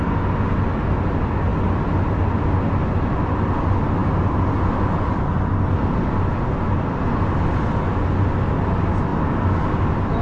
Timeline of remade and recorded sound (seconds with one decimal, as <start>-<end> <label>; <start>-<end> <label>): 0.0-10.2 recorded